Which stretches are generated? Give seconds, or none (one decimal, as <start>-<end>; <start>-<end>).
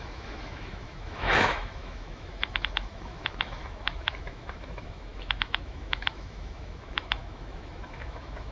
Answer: 0.0-8.5